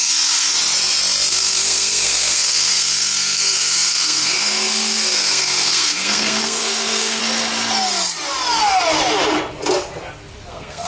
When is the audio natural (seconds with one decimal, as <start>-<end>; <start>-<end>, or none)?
0.5-1.3; 7.2-10.5